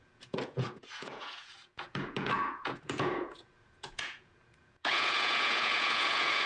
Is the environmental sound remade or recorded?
remade